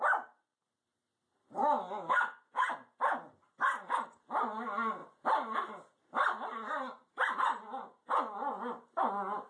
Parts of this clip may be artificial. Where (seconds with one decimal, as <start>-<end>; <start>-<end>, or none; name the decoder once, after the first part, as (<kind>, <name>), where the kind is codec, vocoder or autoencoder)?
none

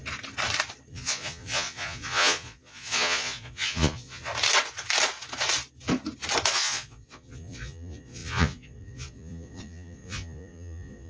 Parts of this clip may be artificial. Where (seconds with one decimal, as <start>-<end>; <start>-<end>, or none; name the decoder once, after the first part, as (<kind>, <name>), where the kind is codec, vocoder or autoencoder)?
0.9-4.3 (vocoder, Vocos); 6.5-11.1

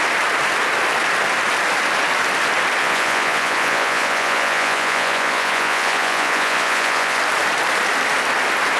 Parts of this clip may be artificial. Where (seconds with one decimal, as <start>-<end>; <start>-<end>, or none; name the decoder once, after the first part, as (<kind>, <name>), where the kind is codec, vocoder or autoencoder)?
2.8-7.2 (vocoder, Vocos)